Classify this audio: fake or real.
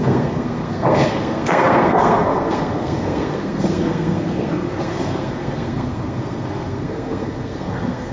fake